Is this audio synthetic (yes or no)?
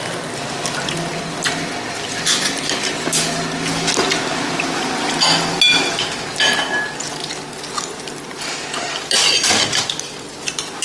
no